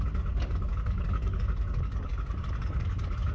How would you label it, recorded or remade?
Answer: remade